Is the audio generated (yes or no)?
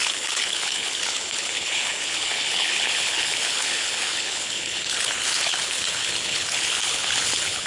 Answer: yes